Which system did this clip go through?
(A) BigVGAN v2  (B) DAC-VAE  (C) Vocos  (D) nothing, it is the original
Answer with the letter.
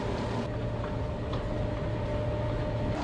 D